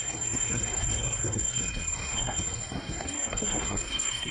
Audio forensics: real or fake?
fake